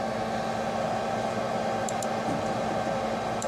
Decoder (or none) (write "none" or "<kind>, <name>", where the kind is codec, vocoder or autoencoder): none